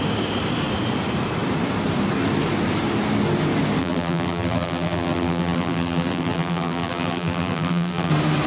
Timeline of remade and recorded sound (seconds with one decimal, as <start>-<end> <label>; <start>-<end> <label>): 0.0-3.8 recorded; 3.8-8.1 remade; 8.1-8.5 recorded